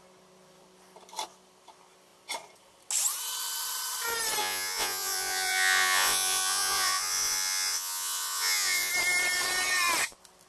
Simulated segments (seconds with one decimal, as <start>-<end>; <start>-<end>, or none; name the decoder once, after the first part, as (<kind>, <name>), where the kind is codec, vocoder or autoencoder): 4.4-8.9 (vocoder, Vocos)